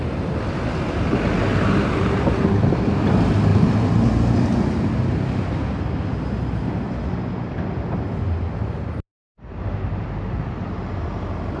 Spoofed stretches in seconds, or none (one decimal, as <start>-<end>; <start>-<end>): 1.5-2.4; 3.5-4.1; 9.3-10.4